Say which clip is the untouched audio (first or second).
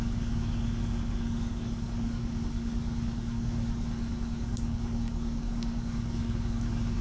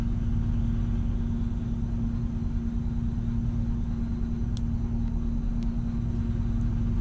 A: second